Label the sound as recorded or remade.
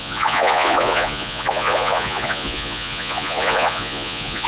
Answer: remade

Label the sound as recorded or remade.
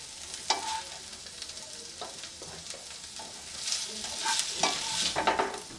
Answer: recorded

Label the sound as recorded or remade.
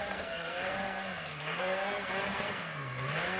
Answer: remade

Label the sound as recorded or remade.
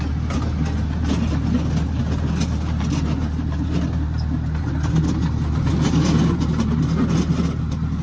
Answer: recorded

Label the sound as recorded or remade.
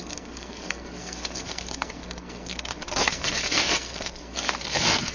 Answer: remade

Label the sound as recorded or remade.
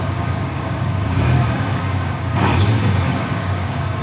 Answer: remade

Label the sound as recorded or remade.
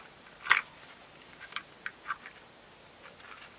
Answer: recorded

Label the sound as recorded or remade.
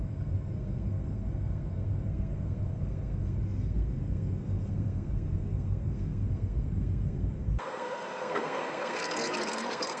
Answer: remade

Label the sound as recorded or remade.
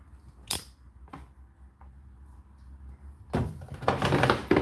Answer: recorded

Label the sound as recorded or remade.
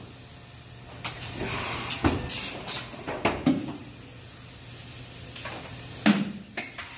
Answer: recorded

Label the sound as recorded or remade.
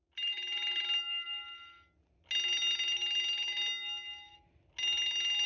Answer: recorded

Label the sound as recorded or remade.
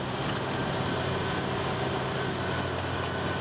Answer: recorded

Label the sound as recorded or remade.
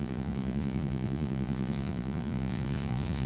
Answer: remade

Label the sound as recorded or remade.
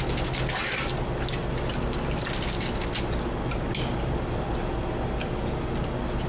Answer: recorded